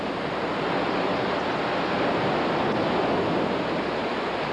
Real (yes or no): yes